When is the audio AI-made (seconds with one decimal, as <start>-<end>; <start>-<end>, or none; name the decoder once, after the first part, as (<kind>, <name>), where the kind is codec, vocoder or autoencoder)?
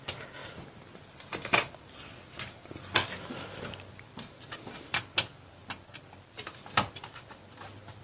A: none